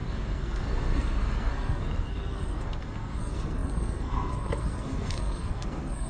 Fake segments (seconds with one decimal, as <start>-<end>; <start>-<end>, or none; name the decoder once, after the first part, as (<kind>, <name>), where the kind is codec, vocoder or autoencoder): 0.0-6.1 (codec, SNAC)